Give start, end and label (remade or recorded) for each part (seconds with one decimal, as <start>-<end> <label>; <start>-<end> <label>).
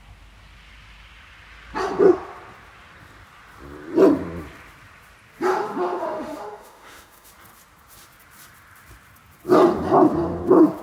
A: 0.0-5.5 recorded; 5.5-7.3 remade; 7.3-10.8 recorded